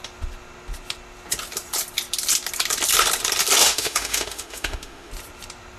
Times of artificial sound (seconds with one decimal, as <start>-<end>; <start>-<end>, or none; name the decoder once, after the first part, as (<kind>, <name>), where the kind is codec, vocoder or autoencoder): 3.6-5.1 (autoencoder, DAC-VAE)

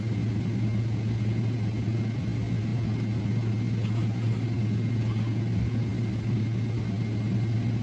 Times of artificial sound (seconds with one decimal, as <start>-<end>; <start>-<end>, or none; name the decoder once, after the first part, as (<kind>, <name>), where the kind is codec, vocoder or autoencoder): none

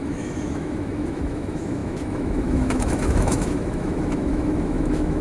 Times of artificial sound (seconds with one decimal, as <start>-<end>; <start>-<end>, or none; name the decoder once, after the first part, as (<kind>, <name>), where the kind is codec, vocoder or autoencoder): 0.0-5.2 (autoencoder, DAC-VAE)

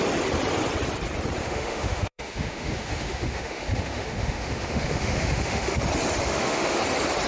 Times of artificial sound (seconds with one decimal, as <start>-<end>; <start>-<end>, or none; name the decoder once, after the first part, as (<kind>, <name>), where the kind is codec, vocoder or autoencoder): 1.4-5.8 (autoencoder, DAC-VAE); 6.2-6.8

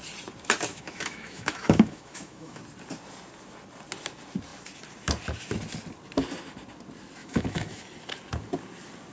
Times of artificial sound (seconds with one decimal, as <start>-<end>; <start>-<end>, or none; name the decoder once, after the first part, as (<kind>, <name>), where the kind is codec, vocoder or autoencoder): 0.7-2.6 (autoencoder, DAC-VAE); 7.2-7.8

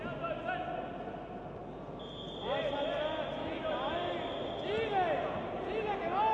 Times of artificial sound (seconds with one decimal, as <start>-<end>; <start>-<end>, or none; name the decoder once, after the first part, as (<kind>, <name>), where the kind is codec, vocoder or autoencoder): none

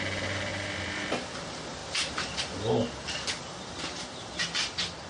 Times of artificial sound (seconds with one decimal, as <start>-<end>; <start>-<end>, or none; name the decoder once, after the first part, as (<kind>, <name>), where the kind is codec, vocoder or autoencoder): none

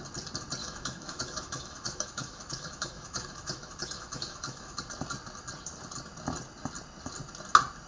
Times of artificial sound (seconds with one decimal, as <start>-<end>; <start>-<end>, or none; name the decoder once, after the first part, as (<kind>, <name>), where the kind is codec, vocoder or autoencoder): 0.6-4.8 (autoencoder, DAC-VAE)